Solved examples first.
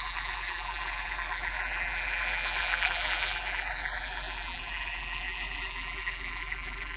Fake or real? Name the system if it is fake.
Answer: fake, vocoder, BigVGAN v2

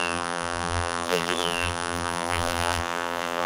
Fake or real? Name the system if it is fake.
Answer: fake, vocoder, BigVGAN v2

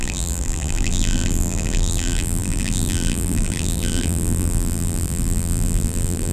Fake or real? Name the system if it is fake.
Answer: fake, vocoder, BigVGAN v2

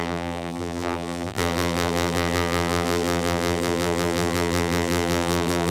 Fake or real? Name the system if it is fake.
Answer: fake, vocoder, BigVGAN v2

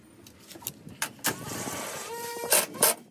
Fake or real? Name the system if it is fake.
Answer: real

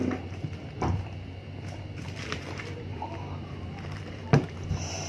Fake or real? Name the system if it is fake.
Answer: fake, vocoder, BigVGAN v2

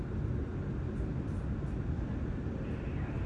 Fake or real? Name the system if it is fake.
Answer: real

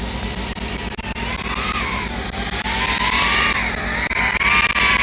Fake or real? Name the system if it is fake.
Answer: real